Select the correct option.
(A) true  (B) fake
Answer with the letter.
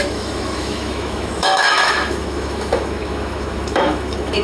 B